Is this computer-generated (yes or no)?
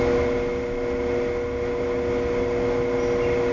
no